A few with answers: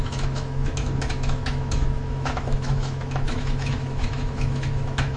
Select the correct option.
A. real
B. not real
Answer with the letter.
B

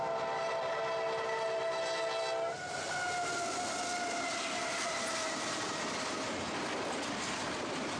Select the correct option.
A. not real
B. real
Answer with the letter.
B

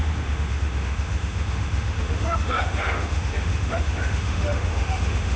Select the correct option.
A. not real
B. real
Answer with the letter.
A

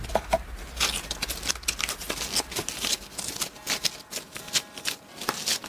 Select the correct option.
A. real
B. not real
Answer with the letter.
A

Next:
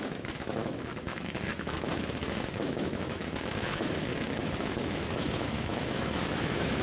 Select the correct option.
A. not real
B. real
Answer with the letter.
A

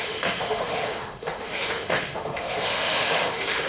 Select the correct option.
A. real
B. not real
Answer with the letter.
B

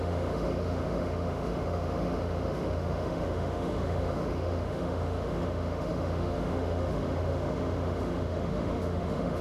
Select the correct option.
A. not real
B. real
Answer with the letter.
A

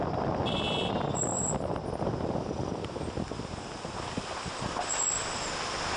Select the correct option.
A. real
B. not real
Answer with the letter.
A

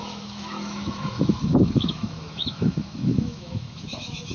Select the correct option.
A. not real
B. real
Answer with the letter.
A